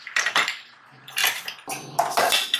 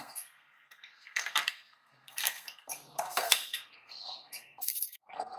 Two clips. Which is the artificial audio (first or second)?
second